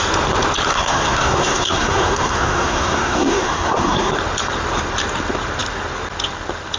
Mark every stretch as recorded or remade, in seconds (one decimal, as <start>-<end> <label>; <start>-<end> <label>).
0.0-0.7 recorded; 0.7-4.1 remade; 4.1-6.8 recorded